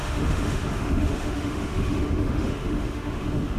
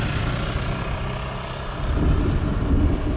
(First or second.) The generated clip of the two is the first